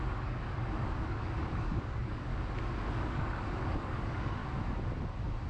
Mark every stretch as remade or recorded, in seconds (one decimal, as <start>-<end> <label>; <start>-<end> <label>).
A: 0.0-2.3 remade; 2.3-2.9 recorded; 2.9-4.4 remade; 4.4-5.5 recorded